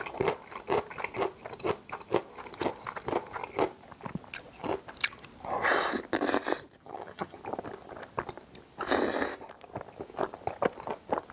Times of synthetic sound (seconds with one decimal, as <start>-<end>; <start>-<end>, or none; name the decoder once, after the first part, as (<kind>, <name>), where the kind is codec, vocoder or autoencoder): 6.8-7.4 (vocoder, HiFi-GAN)